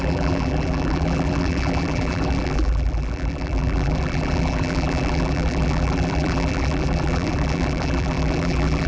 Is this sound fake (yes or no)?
yes